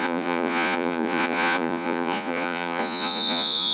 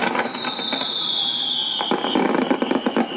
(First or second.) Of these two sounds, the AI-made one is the first